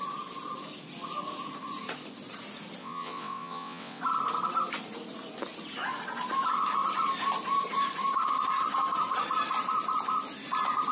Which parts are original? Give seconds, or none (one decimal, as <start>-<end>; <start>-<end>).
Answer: 0.0-2.8; 4.0-10.9